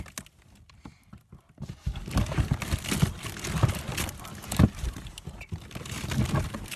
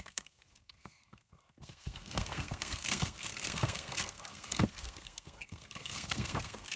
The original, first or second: first